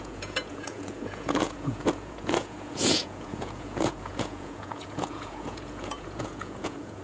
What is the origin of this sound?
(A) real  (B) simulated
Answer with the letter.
B